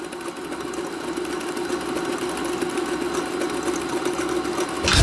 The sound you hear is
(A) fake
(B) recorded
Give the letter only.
B